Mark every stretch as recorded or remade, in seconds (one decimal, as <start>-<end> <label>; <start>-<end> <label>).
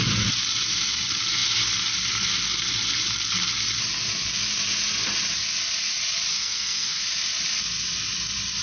0.0-6.3 recorded; 6.3-7.0 remade; 7.0-8.6 recorded